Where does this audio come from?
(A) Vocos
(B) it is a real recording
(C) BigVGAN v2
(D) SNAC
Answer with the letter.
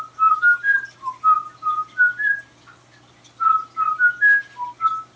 B